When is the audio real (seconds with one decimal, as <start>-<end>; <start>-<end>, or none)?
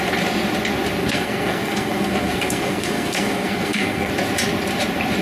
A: 0.0-1.0; 4.1-5.2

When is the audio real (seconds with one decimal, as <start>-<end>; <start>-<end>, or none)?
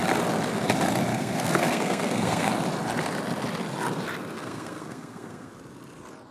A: 0.0-1.1; 2.5-4.4; 5.5-6.3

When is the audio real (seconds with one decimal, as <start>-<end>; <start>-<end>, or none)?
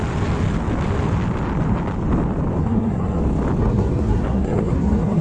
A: 0.0-2.6; 3.2-3.6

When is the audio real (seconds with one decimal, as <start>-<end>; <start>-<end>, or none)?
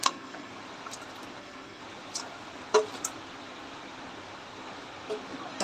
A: 0.5-1.4; 1.8-5.6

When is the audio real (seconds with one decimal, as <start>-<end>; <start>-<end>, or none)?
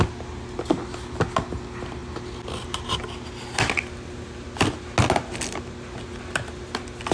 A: 0.0-7.1